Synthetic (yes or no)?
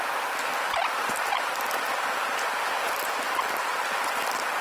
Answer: no